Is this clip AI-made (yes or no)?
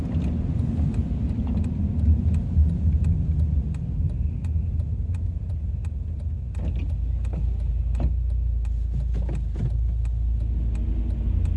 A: no